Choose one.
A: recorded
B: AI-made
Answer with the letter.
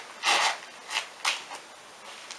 A